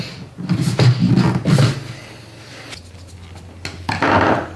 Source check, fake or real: real